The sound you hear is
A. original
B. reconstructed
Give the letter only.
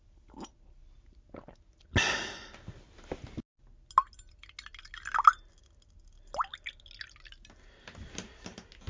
A